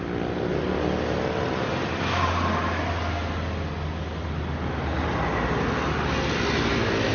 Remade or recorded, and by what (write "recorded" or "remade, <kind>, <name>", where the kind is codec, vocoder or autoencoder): recorded